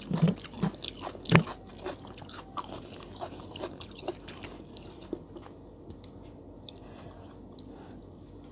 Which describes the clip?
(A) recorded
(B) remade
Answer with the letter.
A